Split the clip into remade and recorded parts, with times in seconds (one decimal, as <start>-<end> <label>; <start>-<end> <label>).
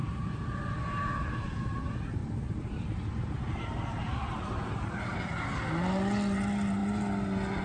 0.0-1.3 remade; 1.3-2.2 recorded; 2.2-5.4 remade; 5.4-7.6 recorded